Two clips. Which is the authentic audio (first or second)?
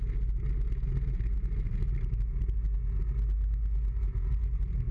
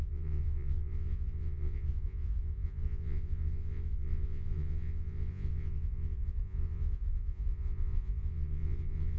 first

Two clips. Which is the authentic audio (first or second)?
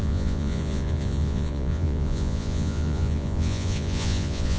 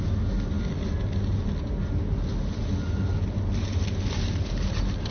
second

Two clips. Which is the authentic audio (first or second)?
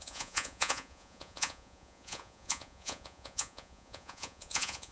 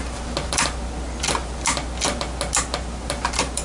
second